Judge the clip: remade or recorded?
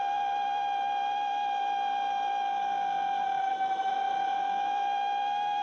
remade